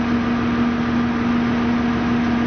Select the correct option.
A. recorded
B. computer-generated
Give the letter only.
A